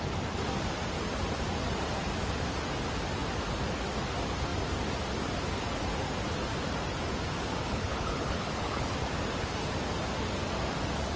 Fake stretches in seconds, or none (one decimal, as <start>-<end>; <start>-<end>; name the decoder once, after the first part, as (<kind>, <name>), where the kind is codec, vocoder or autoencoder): 7.6-8.9 (codec, HILCodec)